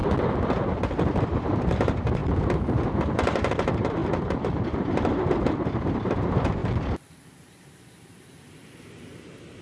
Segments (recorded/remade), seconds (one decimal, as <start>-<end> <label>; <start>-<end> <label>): 0.0-0.7 recorded; 0.7-6.6 remade; 6.6-7.1 recorded; 7.1-9.6 remade

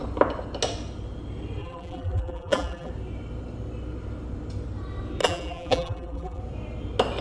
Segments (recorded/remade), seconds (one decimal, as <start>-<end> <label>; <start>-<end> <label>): 0.0-1.6 recorded; 1.6-2.9 remade; 2.9-5.2 recorded; 5.2-6.4 remade; 6.4-7.2 recorded